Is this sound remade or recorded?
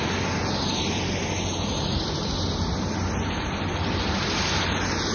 recorded